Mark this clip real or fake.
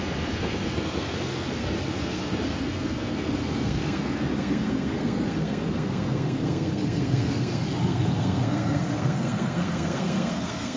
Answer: fake